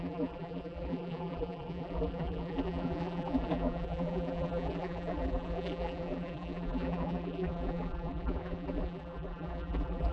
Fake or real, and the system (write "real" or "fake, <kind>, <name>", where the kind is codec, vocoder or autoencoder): fake, vocoder, BigVGAN v2